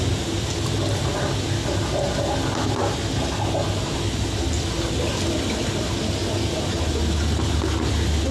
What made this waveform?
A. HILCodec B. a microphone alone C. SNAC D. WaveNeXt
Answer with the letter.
B